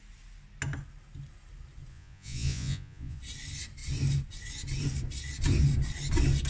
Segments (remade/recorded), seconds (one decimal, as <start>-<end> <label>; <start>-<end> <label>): 0.0-1.9 recorded; 1.9-3.2 remade; 3.2-6.5 recorded

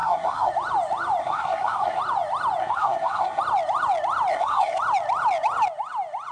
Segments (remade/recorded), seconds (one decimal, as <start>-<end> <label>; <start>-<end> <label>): 0.0-0.5 remade; 0.5-1.2 recorded; 1.2-2.0 remade; 2.0-2.6 recorded; 2.6-3.4 remade; 3.4-4.3 recorded; 4.3-4.8 remade; 4.8-6.3 recorded

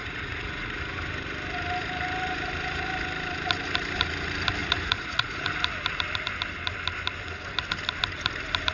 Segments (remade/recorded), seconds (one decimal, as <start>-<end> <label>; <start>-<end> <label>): 0.0-0.8 remade; 0.8-4.6 recorded; 4.6-5.4 remade; 5.4-8.7 recorded